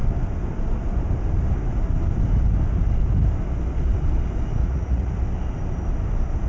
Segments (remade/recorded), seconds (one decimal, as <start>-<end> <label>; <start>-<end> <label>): 0.0-4.6 recorded; 4.6-5.1 remade; 5.1-6.5 recorded